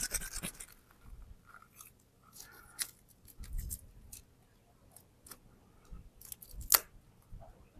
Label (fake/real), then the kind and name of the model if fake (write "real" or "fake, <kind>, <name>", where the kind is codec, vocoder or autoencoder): real